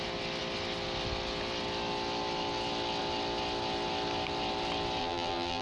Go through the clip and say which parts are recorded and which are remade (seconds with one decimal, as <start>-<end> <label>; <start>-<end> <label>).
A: 0.0-5.0 recorded; 5.0-5.6 remade